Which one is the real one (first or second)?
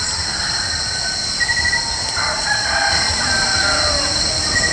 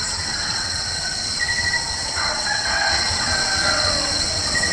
first